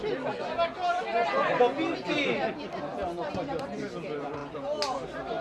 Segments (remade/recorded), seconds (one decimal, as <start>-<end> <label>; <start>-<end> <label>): 0.0-5.4 recorded